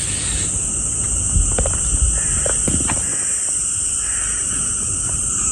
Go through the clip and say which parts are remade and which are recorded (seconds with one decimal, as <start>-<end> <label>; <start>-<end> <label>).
0.0-5.5 recorded